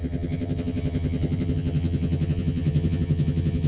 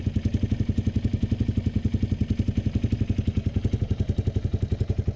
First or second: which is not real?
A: first